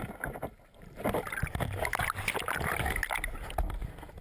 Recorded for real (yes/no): yes